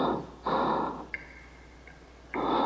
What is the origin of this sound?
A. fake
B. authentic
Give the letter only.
B